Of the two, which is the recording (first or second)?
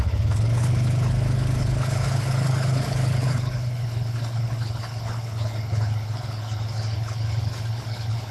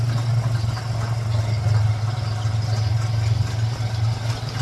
second